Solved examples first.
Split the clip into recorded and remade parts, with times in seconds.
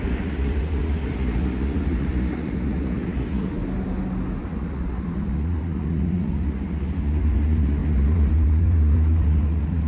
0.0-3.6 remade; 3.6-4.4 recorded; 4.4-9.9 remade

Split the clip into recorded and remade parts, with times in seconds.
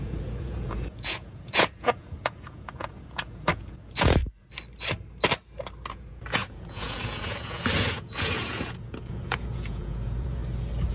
0.0-4.2 remade; 4.2-5.9 recorded; 5.9-10.4 remade; 10.4-10.9 recorded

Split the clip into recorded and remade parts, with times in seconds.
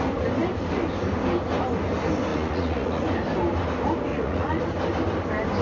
0.0-2.3 recorded; 2.3-3.1 remade; 3.1-4.1 recorded; 4.1-4.6 remade; 4.6-5.6 recorded